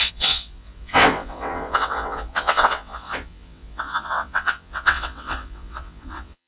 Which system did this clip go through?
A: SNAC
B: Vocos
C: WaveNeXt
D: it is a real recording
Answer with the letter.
C